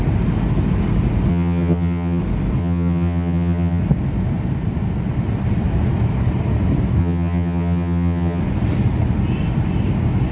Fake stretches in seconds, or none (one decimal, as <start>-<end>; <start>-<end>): 1.3-2.2; 2.6-3.8; 7.0-8.4